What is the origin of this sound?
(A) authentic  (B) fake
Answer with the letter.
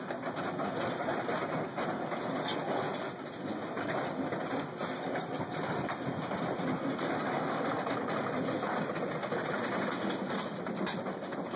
A